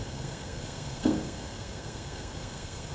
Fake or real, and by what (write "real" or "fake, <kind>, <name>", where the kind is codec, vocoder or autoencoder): fake, codec, SNAC